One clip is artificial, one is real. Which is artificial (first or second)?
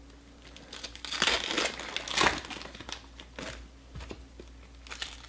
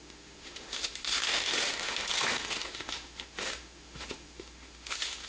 second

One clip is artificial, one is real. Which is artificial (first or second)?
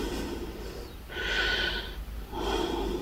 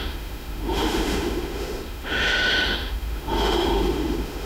second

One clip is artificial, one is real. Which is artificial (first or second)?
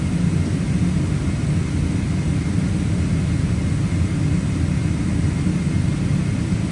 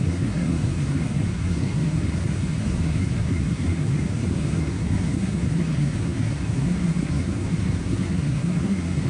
second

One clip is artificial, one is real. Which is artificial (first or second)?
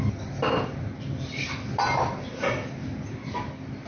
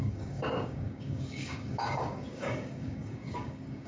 second